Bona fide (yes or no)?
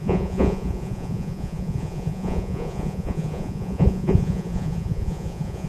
no